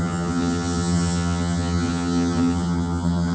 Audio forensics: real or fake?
fake